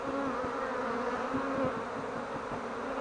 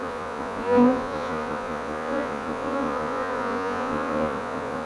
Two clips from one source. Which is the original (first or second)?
first